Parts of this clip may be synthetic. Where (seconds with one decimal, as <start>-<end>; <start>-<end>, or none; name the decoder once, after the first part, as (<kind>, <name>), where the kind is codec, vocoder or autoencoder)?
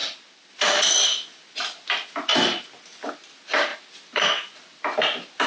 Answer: none